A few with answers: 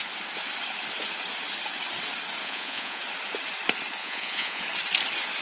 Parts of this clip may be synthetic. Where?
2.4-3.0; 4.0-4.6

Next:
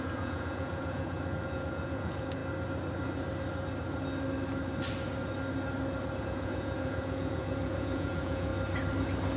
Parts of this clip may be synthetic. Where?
0.0-2.4; 6.2-8.5

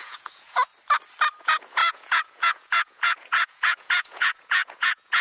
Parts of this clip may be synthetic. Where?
0.0-0.7; 1.4-5.2

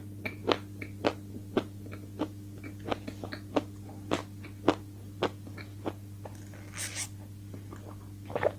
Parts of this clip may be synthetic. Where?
none

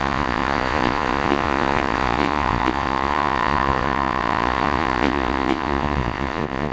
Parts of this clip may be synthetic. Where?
0.0-6.7

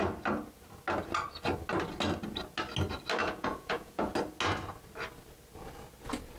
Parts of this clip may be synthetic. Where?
3.2-4.1